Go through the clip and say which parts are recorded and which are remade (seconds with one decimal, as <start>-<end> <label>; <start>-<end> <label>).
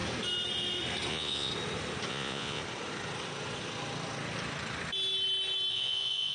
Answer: 0.0-1.1 recorded; 1.1-1.5 remade; 1.5-2.1 recorded; 2.1-2.6 remade; 2.6-5.7 recorded; 5.7-6.3 remade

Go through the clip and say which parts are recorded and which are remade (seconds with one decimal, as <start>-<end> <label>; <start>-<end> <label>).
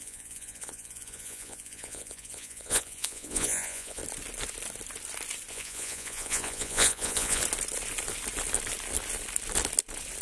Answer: 0.0-4.0 remade; 4.0-5.5 recorded; 5.5-7.4 remade; 7.4-10.2 recorded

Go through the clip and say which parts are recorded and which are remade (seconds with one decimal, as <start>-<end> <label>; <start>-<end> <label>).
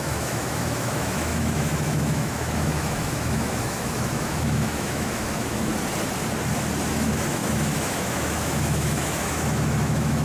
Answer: 0.0-5.7 remade; 5.7-6.9 recorded; 6.9-10.2 remade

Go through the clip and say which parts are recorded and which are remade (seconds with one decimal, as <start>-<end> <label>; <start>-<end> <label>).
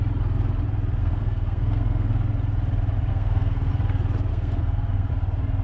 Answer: 0.0-1.0 recorded; 1.0-2.1 remade; 2.1-3.1 recorded; 3.1-3.7 remade; 3.7-4.3 recorded; 4.3-5.1 remade; 5.1-5.6 recorded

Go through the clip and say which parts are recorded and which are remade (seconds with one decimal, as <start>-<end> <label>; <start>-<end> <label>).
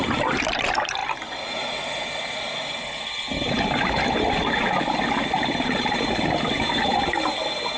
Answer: 0.0-7.8 recorded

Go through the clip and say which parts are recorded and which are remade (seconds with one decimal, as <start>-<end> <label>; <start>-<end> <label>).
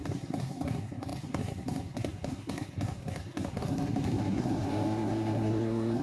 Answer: 0.0-6.0 remade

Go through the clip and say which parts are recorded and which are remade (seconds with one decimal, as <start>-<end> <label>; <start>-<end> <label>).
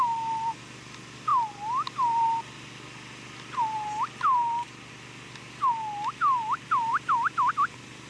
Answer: 0.0-8.1 recorded